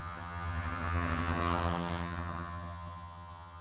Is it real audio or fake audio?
fake